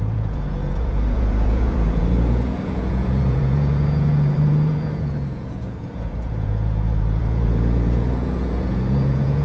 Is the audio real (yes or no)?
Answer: no